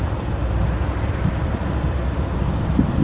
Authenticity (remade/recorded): recorded